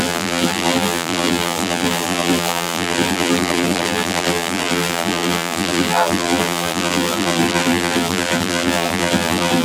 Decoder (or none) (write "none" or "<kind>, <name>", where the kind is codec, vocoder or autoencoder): vocoder, BigVGAN v2